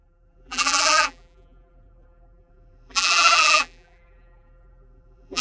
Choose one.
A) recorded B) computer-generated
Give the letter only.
B